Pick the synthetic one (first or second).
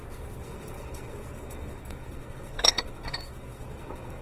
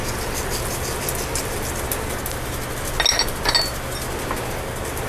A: first